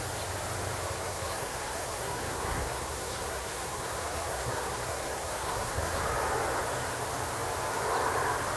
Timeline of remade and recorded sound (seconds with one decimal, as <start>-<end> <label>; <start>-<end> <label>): 0.0-0.8 recorded; 0.8-6.0 remade; 6.0-8.6 recorded